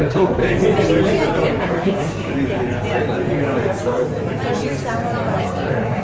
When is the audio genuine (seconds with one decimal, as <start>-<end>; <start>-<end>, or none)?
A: 0.4-1.6; 2.3-5.4